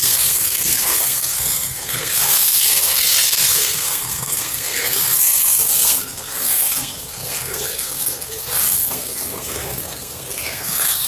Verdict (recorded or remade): remade